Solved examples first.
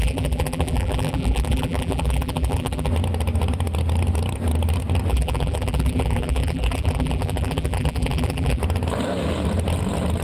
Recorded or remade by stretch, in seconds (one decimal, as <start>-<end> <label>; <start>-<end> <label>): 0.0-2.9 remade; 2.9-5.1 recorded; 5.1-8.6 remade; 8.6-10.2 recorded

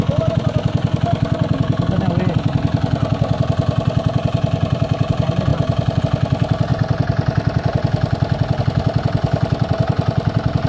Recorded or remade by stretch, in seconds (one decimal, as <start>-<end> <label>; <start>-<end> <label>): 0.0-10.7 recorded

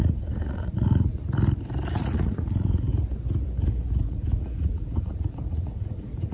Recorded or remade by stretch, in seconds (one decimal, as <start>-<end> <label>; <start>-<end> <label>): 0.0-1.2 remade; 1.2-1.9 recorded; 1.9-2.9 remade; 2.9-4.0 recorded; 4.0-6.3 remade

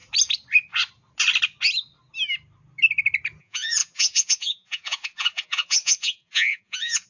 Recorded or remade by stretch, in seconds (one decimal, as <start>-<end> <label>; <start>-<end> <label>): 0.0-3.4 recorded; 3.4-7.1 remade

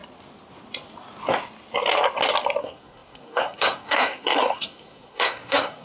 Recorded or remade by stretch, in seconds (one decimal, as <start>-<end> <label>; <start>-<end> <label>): 0.0-2.6 recorded; 2.6-5.8 remade